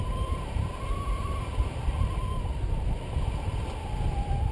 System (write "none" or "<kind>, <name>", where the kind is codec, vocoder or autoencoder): none